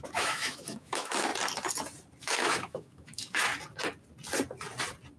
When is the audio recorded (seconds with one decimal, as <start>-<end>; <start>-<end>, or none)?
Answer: 1.3-2.2; 3.5-5.2